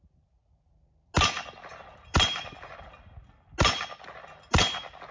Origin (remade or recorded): recorded